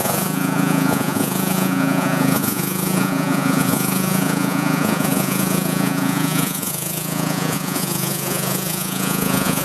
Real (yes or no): no